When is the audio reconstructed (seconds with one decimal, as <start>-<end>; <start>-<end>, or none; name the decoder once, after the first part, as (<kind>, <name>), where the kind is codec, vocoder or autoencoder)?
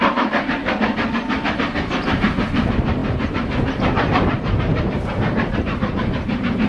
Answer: 0.0-0.6 (vocoder, BigVGAN v2); 1.5-6.7